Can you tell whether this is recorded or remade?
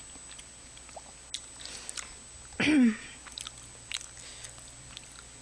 recorded